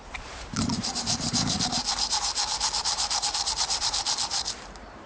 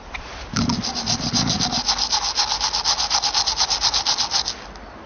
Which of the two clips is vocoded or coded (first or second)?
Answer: first